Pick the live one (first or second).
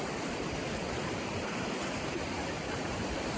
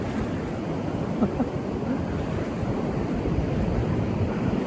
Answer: second